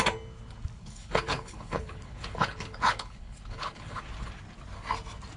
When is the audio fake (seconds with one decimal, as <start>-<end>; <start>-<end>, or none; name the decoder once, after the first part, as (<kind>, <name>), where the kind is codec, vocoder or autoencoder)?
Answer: 0.8-4.0 (codec, HILCodec)